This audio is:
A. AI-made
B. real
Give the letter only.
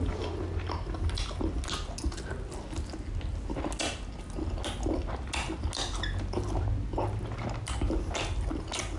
B